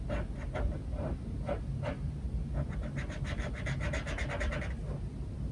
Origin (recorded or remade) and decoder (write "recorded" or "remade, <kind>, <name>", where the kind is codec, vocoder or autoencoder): recorded